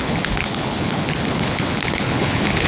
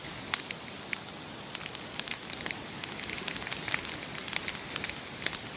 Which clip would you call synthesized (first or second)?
first